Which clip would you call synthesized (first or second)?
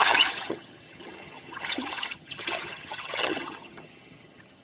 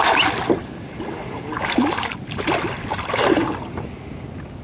first